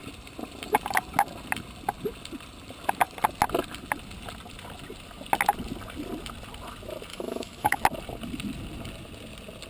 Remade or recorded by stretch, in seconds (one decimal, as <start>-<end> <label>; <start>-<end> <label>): 0.0-7.1 recorded; 7.1-7.8 remade; 7.8-9.7 recorded